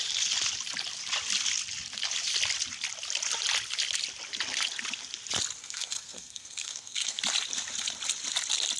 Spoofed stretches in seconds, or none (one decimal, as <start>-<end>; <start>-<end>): 5.6-7.2